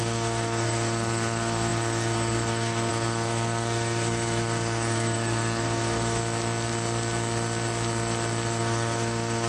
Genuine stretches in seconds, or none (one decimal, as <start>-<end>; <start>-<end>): 6.2-8.6